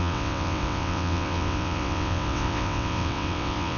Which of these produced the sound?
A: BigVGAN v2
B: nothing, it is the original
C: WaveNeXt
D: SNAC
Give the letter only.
C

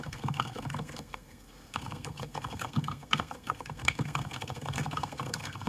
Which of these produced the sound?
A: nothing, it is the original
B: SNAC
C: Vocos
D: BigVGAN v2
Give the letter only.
B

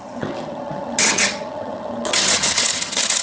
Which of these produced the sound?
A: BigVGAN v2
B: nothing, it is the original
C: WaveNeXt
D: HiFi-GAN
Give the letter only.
D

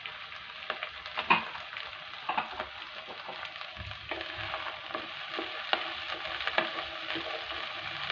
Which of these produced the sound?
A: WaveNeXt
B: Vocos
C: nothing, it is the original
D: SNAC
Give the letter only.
C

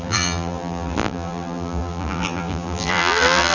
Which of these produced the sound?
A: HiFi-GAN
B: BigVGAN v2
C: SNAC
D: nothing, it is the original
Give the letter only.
B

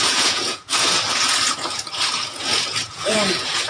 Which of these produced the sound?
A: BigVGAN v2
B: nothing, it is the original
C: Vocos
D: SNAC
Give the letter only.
C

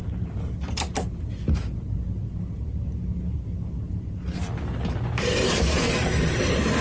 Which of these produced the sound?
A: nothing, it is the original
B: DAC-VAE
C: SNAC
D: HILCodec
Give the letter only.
A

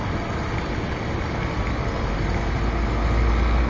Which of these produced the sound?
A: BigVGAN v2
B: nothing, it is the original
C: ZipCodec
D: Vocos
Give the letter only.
B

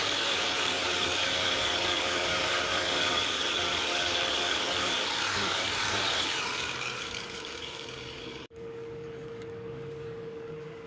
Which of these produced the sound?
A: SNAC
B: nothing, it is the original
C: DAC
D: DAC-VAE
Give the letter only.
C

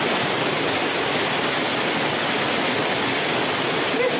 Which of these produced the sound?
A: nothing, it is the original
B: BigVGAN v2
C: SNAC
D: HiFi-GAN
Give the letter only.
A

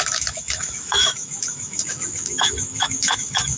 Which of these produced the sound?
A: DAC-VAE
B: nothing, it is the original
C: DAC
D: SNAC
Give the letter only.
A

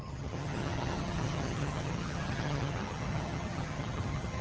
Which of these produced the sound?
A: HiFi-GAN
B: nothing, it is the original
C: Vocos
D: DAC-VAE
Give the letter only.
A